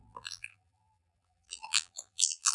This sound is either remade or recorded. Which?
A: remade